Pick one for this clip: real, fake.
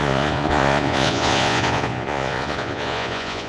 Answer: fake